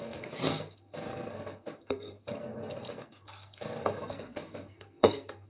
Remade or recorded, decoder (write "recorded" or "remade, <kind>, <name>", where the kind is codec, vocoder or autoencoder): remade, codec, SNAC